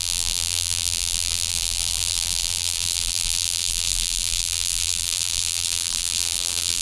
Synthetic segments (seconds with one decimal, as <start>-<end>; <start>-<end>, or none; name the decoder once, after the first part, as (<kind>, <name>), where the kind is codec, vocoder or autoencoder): 0.0-6.8 (vocoder, BigVGAN v2)